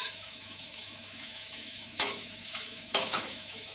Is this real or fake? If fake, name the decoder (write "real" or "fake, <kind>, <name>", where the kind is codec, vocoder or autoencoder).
fake, autoencoder, DAC-VAE